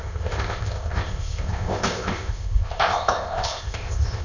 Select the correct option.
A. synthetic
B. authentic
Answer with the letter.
A